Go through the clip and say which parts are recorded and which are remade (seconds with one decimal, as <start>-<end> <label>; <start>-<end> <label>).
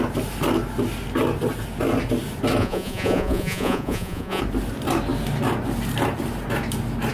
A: 0.0-2.6 recorded; 2.6-4.4 remade; 4.4-7.1 recorded